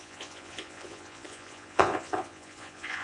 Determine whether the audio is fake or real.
fake